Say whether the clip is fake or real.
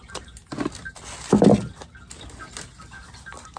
real